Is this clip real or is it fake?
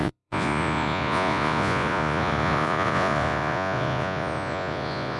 fake